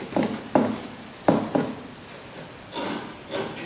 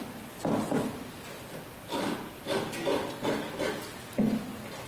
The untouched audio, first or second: first